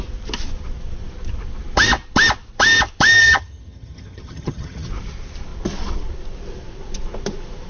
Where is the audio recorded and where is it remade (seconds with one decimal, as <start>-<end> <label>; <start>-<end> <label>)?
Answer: 0.0-3.2 recorded; 3.2-4.9 remade; 4.9-7.7 recorded